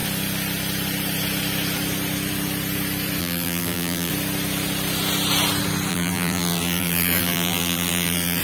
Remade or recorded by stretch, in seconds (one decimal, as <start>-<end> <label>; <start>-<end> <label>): 0.0-3.2 recorded; 3.2-4.1 remade; 4.1-5.9 recorded; 5.9-8.4 remade